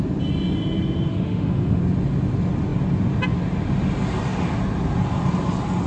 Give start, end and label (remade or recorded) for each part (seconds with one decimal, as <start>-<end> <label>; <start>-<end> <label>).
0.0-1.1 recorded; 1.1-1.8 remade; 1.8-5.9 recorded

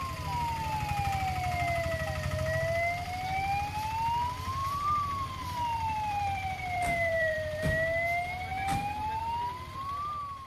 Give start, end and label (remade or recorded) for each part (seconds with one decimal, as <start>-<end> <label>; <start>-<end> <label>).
0.0-4.6 recorded; 4.6-7.6 remade; 7.6-10.5 recorded

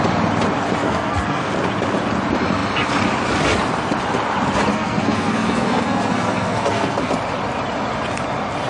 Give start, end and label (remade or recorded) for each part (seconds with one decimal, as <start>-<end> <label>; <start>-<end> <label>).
0.0-0.8 recorded; 0.8-1.5 remade; 1.5-4.7 recorded; 4.7-7.1 remade; 7.1-8.7 recorded